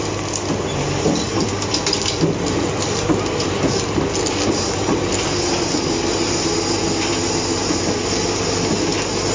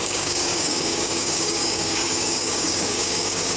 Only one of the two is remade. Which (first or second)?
second